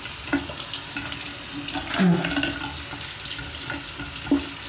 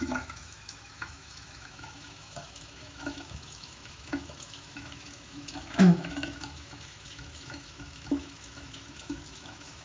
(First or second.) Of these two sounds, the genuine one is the first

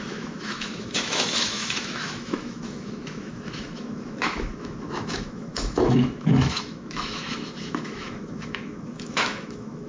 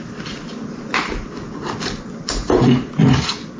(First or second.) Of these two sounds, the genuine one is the second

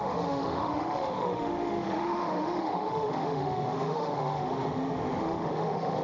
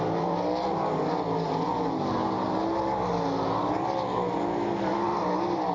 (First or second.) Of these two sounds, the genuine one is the second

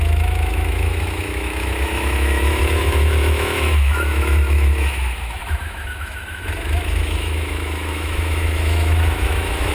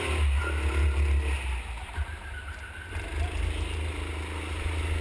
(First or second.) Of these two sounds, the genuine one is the second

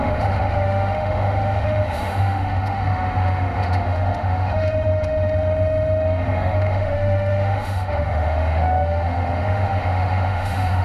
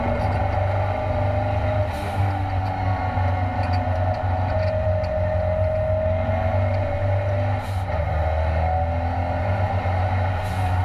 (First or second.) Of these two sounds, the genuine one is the second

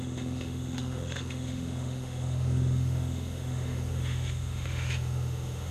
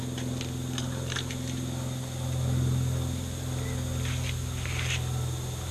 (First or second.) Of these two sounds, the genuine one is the second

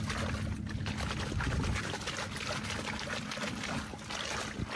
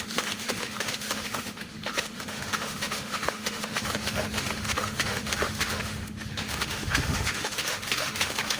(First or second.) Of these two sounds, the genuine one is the first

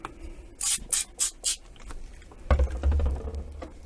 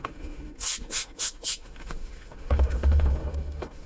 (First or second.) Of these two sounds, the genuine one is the first